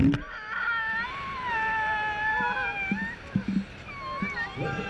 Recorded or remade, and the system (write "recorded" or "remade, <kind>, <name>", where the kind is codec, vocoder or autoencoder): recorded